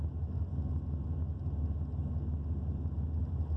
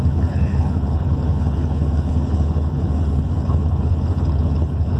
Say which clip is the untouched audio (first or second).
first